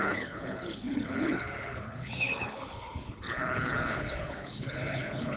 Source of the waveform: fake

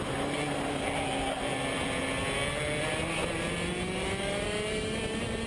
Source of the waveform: real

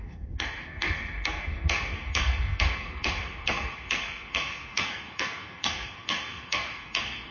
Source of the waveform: fake